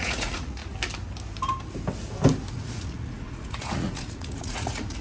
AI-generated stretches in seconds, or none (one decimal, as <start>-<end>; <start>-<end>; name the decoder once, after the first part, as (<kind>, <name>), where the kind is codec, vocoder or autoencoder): 0.0-0.6 (vocoder, Vocos); 2.5-5.0